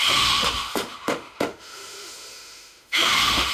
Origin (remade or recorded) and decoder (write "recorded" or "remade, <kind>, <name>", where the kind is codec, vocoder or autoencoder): remade, autoencoder, DAC-VAE